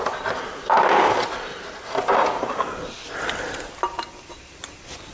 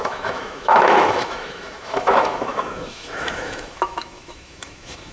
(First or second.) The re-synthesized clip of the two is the second